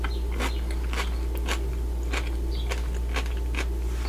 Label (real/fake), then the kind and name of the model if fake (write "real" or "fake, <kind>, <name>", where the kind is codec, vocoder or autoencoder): real